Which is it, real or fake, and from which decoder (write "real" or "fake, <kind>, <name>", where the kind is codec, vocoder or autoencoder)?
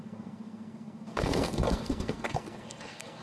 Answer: fake, codec, SNAC